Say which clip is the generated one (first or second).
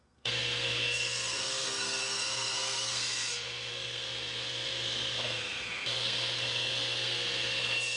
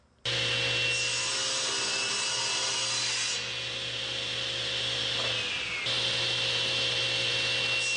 first